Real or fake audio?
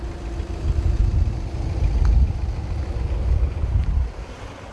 real